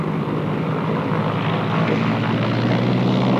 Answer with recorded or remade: recorded